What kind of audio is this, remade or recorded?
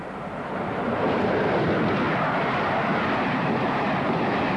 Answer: recorded